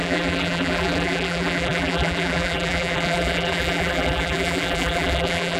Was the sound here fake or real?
fake